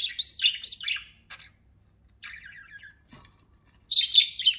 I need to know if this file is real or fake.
real